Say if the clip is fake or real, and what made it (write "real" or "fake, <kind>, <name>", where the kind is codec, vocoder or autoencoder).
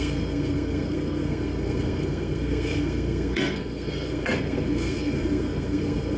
fake, codec, SNAC